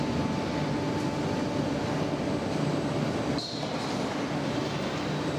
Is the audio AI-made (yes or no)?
no